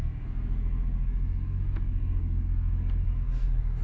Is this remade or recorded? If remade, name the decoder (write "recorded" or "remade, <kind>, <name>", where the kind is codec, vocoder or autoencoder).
remade, codec, SNAC